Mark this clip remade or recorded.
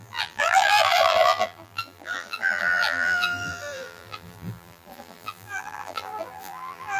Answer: remade